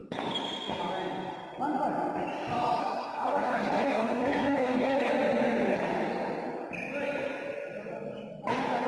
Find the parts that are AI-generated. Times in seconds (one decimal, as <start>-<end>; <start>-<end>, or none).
2.8-5.1